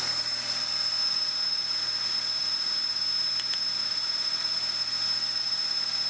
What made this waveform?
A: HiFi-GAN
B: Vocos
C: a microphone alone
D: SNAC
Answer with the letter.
C